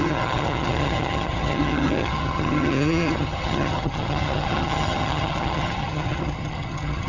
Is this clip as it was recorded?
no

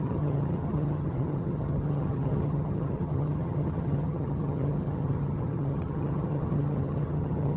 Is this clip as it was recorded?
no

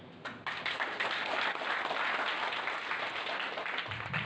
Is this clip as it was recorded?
yes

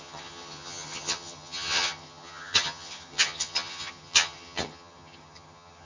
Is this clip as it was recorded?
no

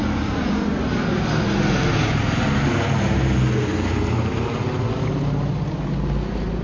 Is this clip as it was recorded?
yes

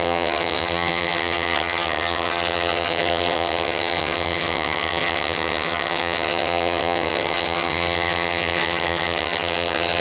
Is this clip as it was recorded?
no